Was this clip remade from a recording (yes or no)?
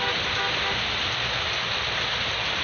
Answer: no